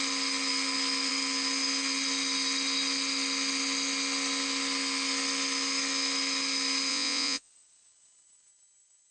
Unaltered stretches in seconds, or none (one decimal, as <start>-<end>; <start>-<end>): 0.0-6.9; 7.5-9.1